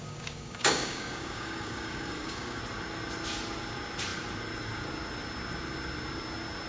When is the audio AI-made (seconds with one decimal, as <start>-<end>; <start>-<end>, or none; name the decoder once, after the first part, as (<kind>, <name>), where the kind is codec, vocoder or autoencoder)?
0.0-2.6 (codec, DAC)